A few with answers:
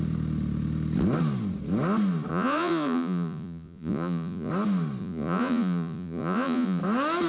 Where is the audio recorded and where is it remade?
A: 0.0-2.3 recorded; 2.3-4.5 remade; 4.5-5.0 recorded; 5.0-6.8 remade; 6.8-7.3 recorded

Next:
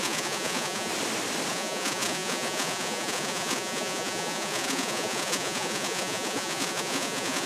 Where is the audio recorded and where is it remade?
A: 0.0-0.9 remade; 0.9-1.5 recorded; 1.5-7.5 remade

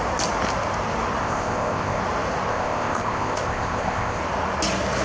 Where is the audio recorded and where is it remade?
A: 0.0-1.2 recorded; 1.2-2.0 remade; 2.0-2.5 recorded; 2.5-4.2 remade; 4.2-5.0 recorded

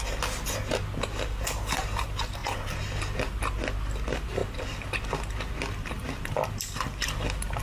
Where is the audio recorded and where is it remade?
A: 0.0-7.6 recorded

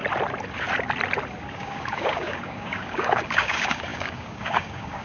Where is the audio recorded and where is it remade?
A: 0.0-1.4 recorded; 1.4-5.0 remade

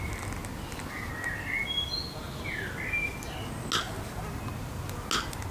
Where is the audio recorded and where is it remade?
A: 0.0-5.5 recorded

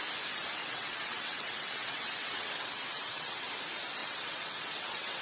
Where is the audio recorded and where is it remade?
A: 0.0-0.6 recorded; 0.6-3.5 remade; 3.5-4.0 recorded; 4.0-5.2 remade